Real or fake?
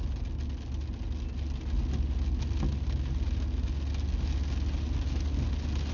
real